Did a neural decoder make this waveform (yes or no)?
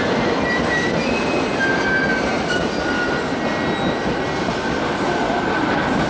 no